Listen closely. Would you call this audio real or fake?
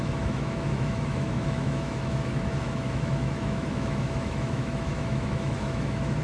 fake